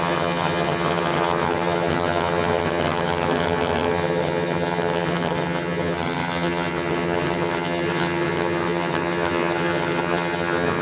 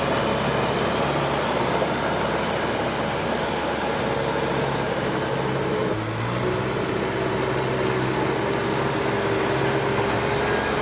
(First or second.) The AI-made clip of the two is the first